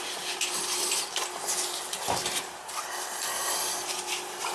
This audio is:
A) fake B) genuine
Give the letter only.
B